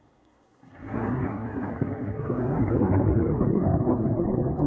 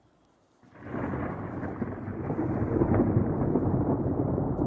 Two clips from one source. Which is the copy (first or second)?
first